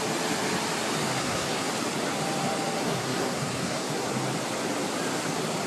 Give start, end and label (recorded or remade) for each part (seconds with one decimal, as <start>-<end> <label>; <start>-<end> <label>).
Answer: 0.0-1.2 recorded; 1.2-1.7 remade; 1.7-2.8 recorded; 2.8-4.1 remade; 4.1-5.7 recorded